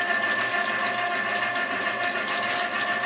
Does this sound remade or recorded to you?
recorded